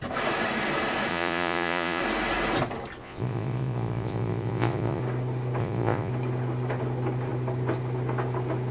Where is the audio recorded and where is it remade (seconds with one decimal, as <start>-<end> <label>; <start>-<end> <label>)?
0.0-1.1 recorded; 1.1-2.0 remade; 2.0-3.0 recorded; 3.0-5.0 remade; 5.0-5.6 recorded; 5.6-6.1 remade; 6.1-8.7 recorded